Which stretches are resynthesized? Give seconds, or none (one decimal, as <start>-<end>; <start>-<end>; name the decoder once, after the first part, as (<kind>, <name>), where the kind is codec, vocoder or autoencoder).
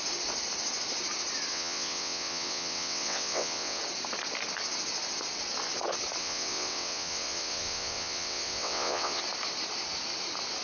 1.5-3.8 (vocoder, WaveNeXt); 6.2-9.2